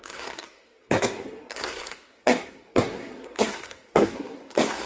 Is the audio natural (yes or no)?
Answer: no